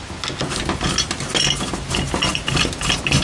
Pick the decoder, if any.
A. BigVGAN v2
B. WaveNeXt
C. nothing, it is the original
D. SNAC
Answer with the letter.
C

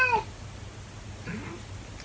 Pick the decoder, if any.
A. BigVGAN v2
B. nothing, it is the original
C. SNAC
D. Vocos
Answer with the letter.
B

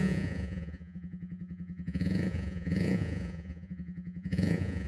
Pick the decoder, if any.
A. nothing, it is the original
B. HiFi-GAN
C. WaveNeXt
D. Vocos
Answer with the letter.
D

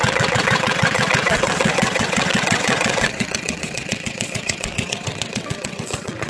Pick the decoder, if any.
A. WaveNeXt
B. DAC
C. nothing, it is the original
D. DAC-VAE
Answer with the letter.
A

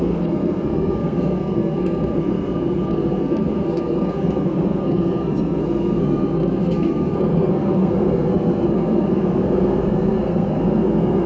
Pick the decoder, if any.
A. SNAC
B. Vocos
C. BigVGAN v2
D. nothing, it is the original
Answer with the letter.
A